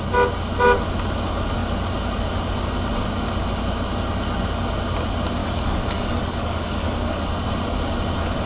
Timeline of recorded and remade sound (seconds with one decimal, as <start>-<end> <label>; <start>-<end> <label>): 0.0-5.4 recorded; 5.4-7.2 remade; 7.2-8.5 recorded